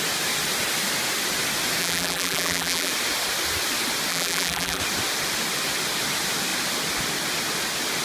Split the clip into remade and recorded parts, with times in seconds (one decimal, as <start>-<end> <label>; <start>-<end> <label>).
0.0-1.8 recorded; 1.8-2.9 remade; 2.9-4.1 recorded; 4.1-4.8 remade; 4.8-8.0 recorded